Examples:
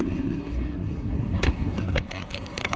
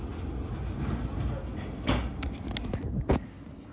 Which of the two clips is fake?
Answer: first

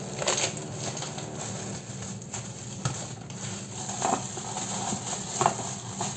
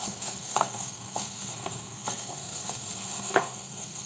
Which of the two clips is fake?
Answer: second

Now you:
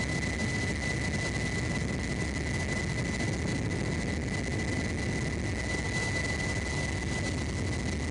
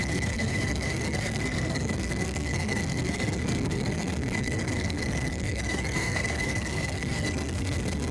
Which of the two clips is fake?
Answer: second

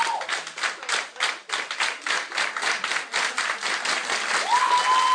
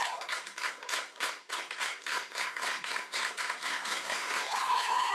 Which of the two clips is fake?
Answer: second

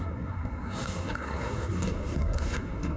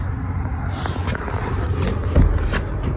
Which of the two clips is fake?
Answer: first